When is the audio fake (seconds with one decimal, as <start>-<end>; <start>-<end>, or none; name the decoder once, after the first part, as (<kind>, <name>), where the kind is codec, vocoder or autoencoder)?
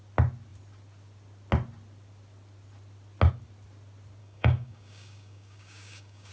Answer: 4.2-6.3 (codec, DAC)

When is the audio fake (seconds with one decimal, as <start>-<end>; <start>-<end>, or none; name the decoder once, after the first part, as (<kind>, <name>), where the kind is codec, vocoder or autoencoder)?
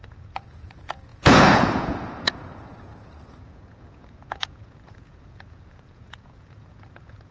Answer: 0.0-7.3 (vocoder, Vocos)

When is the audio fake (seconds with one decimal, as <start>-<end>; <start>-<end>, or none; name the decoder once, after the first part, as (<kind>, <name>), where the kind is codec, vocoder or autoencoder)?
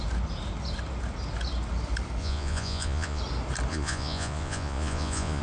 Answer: 2.2-3.2 (vocoder, Vocos); 3.7-5.4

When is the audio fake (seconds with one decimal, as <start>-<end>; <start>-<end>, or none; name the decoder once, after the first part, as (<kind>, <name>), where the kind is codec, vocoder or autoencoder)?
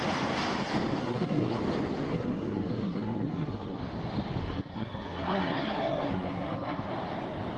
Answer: 1.0-1.6 (codec, SNAC); 2.1-3.8; 4.4-6.9